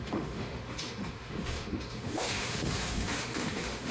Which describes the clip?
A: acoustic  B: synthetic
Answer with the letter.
B